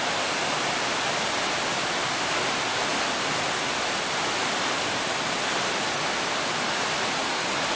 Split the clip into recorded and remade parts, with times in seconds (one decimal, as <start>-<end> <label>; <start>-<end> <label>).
0.0-7.8 recorded